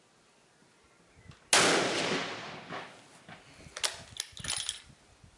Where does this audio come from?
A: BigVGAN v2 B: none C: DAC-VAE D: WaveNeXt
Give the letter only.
B